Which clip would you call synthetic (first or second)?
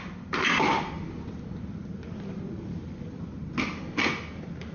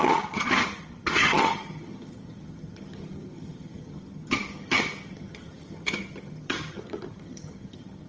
second